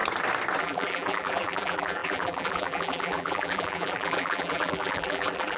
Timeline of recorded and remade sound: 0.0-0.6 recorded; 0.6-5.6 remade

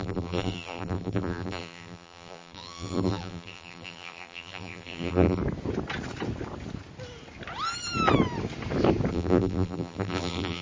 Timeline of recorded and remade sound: 0.0-5.4 remade; 5.4-9.1 recorded; 9.1-10.6 remade

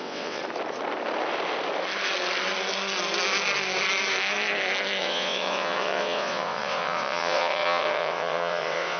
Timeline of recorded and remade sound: 0.0-0.4 remade; 0.4-5.0 recorded; 5.0-9.0 remade

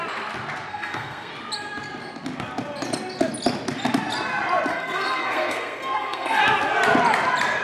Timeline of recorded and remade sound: 0.0-0.7 recorded; 0.7-1.3 remade; 1.3-4.7 recorded; 4.7-6.4 remade; 6.4-7.6 recorded

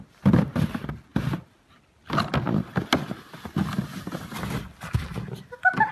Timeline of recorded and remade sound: 0.0-5.9 recorded

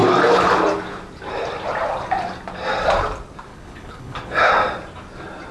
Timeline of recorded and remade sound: 0.0-3.5 recorded; 3.5-4.5 remade; 4.5-5.5 recorded

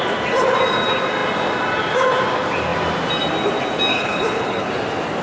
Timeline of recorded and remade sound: 0.0-3.9 recorded; 3.9-4.7 remade; 4.7-5.2 recorded